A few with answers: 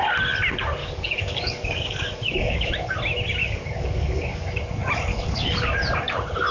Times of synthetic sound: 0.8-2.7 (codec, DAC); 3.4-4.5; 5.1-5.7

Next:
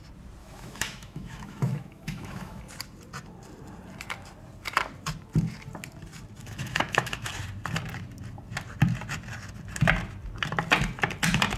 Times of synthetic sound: 0.4-2.6 (autoencoder, DAC-VAE); 6.4-7.3

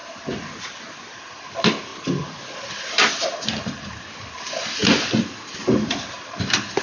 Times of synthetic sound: 1.2-1.9 (vocoder, BigVGAN v2); 3.1-6.8

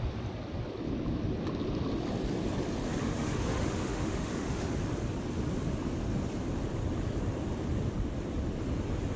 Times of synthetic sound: 3.0-4.7 (autoencoder, DAC-VAE)

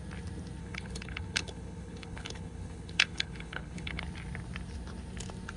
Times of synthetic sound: 0.6-4.0 (codec, HILCodec)

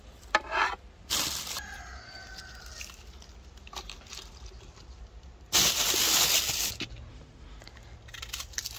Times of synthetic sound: 7.1-7.6 (autoencoder, DAC-VAE)